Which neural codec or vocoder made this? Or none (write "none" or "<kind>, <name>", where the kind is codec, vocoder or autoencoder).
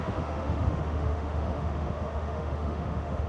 autoencoder, DAC-VAE